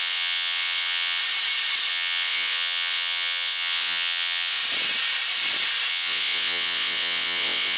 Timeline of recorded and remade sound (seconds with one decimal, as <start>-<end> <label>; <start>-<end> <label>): 0.0-1.2 remade; 1.2-1.9 recorded; 1.9-4.6 remade; 4.6-5.9 recorded; 5.9-7.8 remade